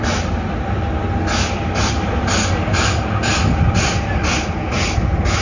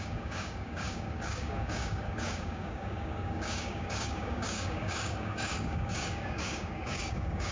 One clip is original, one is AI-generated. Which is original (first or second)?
first